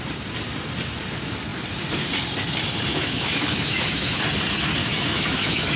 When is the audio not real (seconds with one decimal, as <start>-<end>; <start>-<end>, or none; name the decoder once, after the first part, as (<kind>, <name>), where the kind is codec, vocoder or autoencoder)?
2.9-4.2 (autoencoder, DAC-VAE); 4.8-5.8